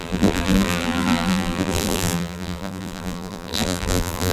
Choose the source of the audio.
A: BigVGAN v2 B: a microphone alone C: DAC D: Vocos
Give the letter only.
A